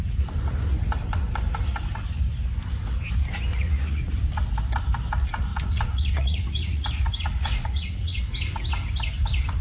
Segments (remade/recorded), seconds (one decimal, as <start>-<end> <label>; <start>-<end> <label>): 0.0-3.5 recorded; 3.5-4.1 remade; 4.1-5.5 recorded; 5.5-8.2 remade; 8.2-9.6 recorded